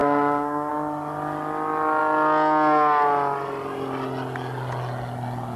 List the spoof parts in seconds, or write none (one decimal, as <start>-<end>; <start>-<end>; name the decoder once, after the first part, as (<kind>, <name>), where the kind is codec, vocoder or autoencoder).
0.0-0.7 (codec, SNAC)